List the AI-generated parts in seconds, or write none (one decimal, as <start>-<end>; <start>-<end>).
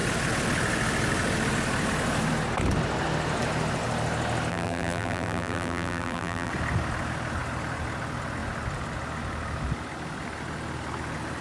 4.5-6.5